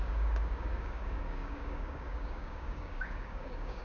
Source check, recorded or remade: remade